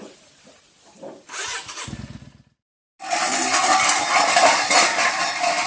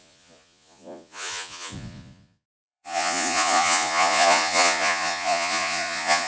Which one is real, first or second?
first